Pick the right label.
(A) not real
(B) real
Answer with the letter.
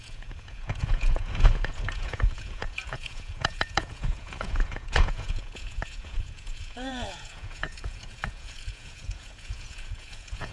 A